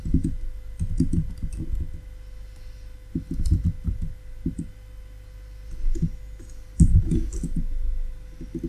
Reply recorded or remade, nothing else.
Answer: recorded